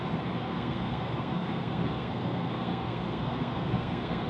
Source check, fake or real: fake